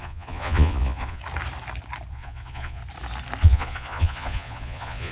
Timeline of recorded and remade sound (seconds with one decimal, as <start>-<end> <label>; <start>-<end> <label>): 0.0-1.2 remade; 1.2-2.1 recorded; 2.1-2.8 remade; 2.8-3.4 recorded; 3.4-5.1 remade